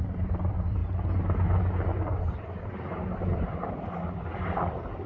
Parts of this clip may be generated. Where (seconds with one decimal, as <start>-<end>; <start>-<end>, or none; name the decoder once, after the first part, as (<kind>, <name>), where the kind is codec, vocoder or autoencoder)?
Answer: 0.0-0.8 (vocoder, BigVGAN v2); 2.2-5.1